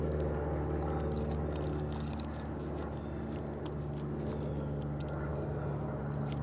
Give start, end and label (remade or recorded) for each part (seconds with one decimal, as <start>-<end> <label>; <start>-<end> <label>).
0.0-6.4 recorded